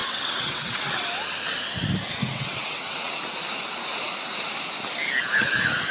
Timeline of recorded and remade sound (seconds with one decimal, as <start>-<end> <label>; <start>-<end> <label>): 0.0-1.0 remade; 1.0-2.2 recorded; 2.2-3.2 remade; 3.2-5.9 recorded